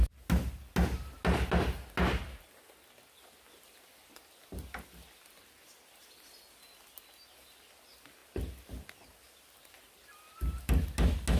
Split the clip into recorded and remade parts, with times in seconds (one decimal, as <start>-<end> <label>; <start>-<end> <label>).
0.0-11.4 recorded